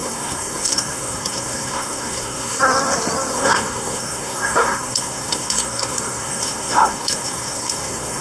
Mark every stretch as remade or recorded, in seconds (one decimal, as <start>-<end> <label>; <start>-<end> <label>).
0.0-2.6 remade; 2.6-3.3 recorded; 3.3-8.2 remade